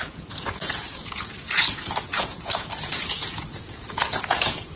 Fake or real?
fake